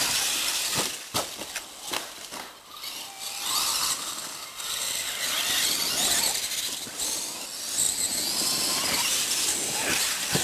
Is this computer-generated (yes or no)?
no